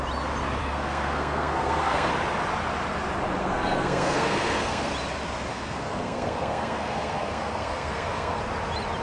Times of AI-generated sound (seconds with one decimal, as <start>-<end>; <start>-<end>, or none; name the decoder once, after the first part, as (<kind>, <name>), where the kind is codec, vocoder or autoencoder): 0.6-2.1 (codec, SNAC); 3.4-4.9; 5.5-8.4